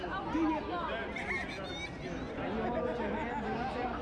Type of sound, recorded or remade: recorded